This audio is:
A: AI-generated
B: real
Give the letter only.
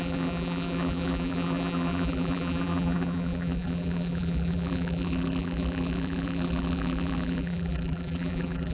A